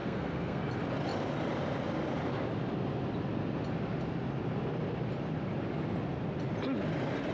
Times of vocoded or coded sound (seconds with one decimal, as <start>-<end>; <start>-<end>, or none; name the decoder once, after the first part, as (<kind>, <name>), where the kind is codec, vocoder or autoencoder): 0.0-0.6 (codec, SNAC)